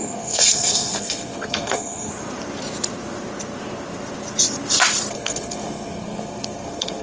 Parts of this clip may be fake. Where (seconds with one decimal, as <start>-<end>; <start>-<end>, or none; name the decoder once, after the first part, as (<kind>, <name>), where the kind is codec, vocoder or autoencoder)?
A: 0.0-2.1 (codec, SNAC); 5.1-7.0